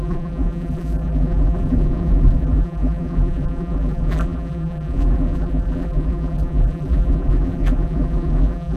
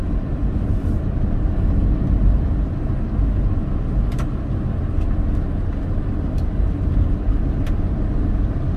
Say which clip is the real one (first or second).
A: second